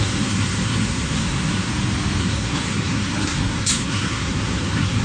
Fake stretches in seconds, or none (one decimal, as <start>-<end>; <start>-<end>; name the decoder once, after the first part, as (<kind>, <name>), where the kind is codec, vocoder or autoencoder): 0.0-1.7 (codec, SNAC); 2.2-5.0